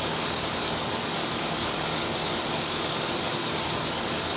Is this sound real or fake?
fake